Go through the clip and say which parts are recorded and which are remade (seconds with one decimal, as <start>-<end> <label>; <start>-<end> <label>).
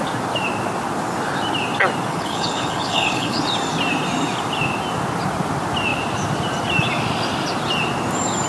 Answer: 0.0-2.1 recorded; 2.1-3.4 remade; 3.4-8.5 recorded